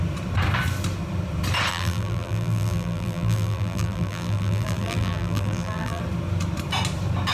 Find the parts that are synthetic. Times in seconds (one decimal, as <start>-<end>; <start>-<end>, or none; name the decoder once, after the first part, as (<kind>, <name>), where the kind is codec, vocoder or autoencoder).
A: 1.7-6.0 (vocoder, BigVGAN v2)